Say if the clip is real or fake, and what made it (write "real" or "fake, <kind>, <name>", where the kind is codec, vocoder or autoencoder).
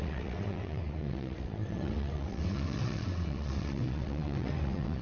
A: fake, vocoder, WaveNeXt